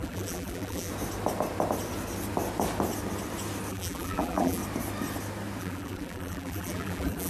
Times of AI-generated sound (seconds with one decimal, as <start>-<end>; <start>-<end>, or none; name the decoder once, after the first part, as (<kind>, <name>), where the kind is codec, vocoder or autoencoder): 0.0-0.9 (vocoder, BigVGAN v2); 3.7-4.6; 5.6-7.3